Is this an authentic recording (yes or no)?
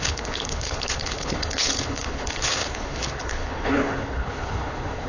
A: no